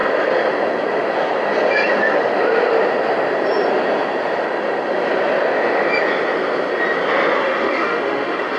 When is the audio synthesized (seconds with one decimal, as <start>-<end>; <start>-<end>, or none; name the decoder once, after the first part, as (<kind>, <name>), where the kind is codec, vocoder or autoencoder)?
7.4-8.6 (autoencoder, DAC-VAE)